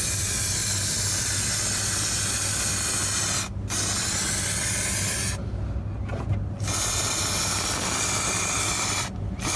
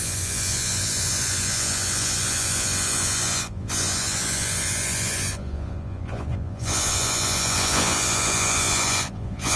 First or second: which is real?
first